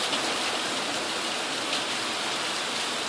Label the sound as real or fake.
real